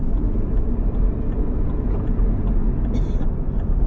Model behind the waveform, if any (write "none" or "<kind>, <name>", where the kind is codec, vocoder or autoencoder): none